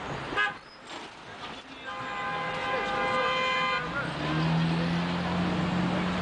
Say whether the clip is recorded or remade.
recorded